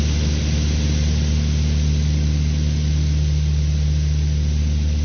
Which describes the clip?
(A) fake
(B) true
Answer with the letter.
B